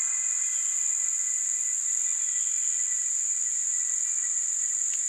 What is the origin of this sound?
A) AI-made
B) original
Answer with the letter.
B